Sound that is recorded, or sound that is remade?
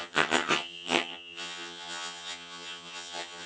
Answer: remade